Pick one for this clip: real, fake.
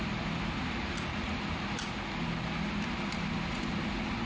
real